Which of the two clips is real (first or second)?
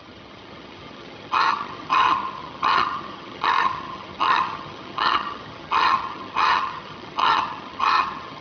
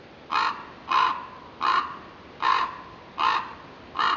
second